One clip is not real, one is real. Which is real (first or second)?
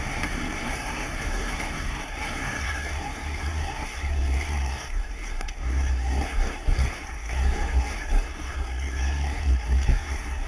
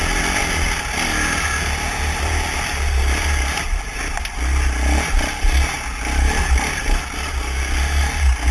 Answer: second